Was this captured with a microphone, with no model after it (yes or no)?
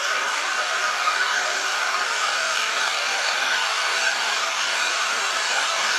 no